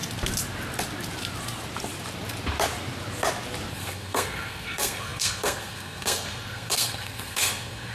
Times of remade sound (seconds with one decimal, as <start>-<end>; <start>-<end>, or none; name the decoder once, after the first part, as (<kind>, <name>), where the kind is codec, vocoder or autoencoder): 3.7-7.9 (codec, SNAC)